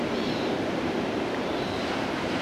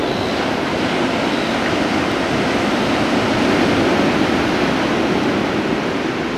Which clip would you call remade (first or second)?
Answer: first